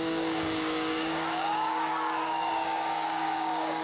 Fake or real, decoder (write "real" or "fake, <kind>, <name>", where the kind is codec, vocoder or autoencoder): fake, codec, DAC